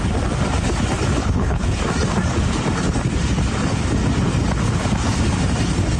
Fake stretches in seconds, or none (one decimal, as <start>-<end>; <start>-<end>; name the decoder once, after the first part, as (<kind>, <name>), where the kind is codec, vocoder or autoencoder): 1.2-1.8 (codec, HILCodec)